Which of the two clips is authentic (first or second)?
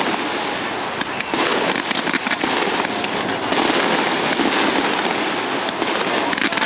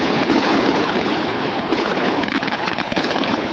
first